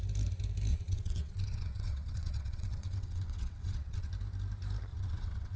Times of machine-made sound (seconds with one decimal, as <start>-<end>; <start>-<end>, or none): 0.7-4.1; 4.9-5.6